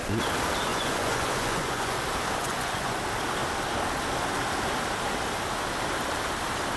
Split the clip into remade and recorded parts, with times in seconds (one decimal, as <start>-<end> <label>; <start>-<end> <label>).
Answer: 0.0-0.7 recorded; 0.7-2.0 remade; 2.0-2.4 recorded; 2.4-3.0 remade; 3.0-6.8 recorded